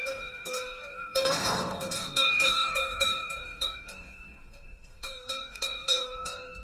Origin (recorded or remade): remade